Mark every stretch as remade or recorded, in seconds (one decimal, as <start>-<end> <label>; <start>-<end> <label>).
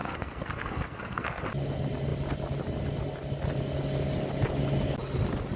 0.0-1.4 remade; 1.4-5.6 recorded